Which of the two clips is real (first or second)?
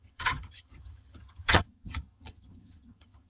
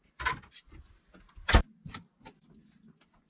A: second